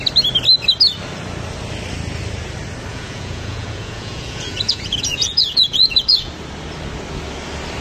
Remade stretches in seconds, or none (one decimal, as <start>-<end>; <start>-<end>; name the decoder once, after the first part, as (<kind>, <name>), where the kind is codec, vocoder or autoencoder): 2.9-6.3 (vocoder, Vocos)